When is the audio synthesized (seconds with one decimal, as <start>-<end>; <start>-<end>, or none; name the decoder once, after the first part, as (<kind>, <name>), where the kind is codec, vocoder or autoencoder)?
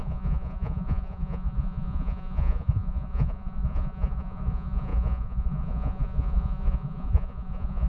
0.0-7.9 (vocoder, Vocos)